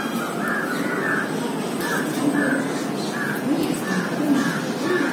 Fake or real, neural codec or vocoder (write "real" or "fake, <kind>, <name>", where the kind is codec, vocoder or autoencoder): real